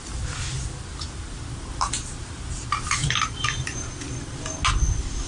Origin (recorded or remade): recorded